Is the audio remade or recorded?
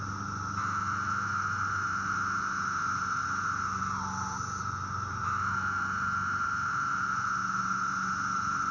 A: recorded